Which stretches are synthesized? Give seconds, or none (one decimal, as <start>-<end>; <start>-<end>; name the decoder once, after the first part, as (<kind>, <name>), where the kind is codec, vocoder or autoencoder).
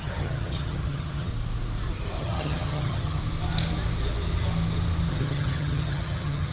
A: 0.0-1.3 (vocoder, HiFi-GAN); 2.2-3.2; 5.1-6.5